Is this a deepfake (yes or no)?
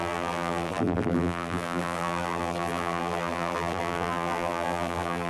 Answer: yes